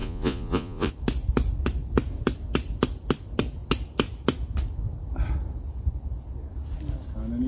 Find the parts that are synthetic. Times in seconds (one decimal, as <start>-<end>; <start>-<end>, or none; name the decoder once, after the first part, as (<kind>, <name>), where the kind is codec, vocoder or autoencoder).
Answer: 0.0-0.9 (vocoder, Vocos)